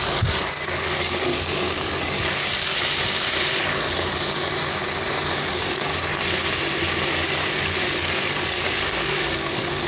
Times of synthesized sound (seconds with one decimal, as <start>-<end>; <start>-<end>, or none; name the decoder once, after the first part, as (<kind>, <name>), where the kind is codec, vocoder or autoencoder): 0.0-2.7 (codec, DAC); 3.6-4.5; 5.4-5.9; 7.1-9.9